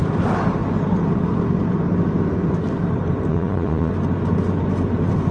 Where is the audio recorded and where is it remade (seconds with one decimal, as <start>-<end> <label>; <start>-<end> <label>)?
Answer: 0.0-3.3 recorded; 3.3-3.9 remade; 3.9-5.3 recorded